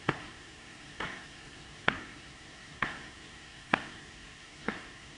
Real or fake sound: fake